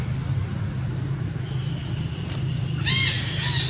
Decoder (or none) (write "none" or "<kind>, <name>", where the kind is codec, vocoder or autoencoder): none